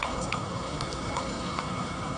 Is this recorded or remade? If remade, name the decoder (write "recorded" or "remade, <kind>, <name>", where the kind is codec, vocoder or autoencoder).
remade, codec, SNAC